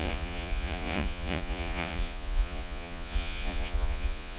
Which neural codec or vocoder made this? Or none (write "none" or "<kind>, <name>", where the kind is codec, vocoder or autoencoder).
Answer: vocoder, Vocos